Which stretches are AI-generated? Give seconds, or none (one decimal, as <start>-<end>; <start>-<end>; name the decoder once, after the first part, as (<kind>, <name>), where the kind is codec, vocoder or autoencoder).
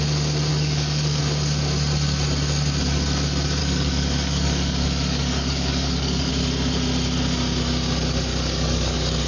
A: 0.5-1.2 (codec, DAC); 3.6-6.3; 8.3-9.3